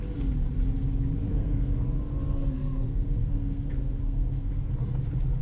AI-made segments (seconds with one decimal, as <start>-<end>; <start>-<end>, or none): 1.2-1.8; 2.4-4.7